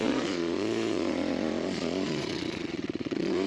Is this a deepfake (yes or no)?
yes